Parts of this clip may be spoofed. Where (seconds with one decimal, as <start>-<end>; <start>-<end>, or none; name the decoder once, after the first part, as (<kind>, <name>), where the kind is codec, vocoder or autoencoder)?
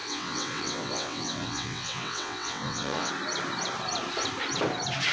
0.0-3.1 (vocoder, WaveNeXt)